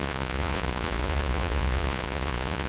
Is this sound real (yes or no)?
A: no